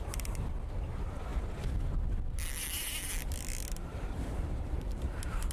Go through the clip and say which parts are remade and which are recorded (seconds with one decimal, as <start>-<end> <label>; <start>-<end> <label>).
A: 0.0-3.9 recorded; 3.9-5.1 remade; 5.1-5.5 recorded